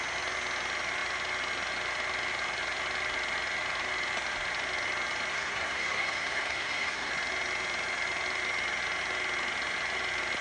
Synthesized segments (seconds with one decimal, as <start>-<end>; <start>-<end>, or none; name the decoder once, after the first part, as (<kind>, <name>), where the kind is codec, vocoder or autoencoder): 5.3-7.1 (codec, SNAC)